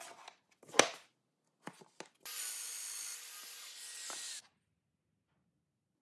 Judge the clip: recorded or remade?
recorded